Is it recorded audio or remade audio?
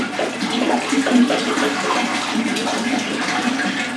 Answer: recorded